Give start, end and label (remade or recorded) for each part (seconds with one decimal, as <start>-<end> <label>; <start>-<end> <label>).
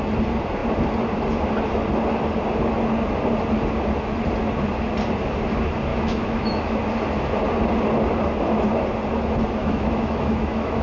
0.0-5.9 recorded; 5.9-6.8 remade; 6.8-9.6 recorded; 9.6-10.8 remade